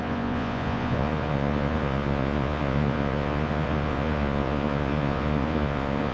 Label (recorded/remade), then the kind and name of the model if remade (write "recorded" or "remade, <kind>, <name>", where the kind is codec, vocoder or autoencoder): remade, vocoder, Vocos